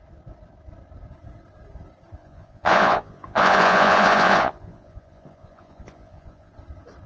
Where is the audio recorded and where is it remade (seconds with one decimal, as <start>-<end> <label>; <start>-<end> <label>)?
0.0-2.2 recorded; 2.2-6.5 remade; 6.5-7.1 recorded